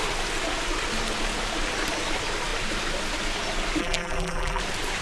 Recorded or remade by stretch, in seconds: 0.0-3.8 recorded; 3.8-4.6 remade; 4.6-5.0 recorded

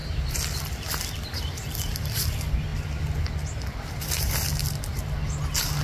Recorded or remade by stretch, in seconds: 0.0-5.8 recorded